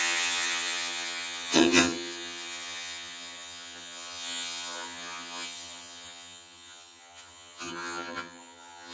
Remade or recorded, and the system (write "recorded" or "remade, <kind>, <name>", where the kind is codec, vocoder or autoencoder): remade, vocoder, HiFi-GAN